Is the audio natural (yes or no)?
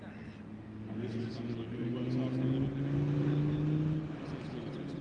yes